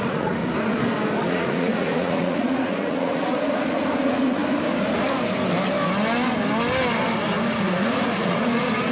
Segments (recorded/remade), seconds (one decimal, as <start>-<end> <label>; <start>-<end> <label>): 0.0-0.4 remade; 0.4-1.3 recorded; 1.3-4.4 remade; 4.4-7.5 recorded; 7.5-8.9 remade